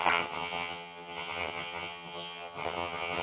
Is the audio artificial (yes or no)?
yes